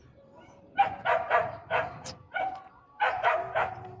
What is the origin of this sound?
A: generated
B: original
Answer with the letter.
A